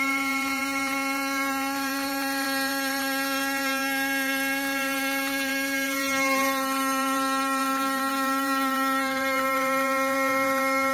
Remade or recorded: remade